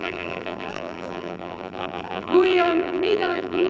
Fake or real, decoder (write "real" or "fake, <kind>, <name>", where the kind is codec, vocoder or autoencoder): fake, vocoder, BigVGAN v2